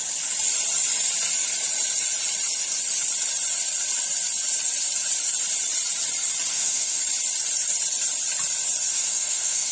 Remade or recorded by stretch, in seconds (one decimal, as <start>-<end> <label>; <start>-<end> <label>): 0.0-6.5 recorded; 6.5-7.0 remade; 7.0-8.9 recorded; 8.9-9.7 remade